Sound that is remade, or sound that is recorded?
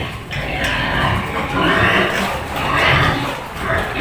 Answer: recorded